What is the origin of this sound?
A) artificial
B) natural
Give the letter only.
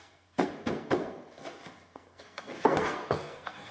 A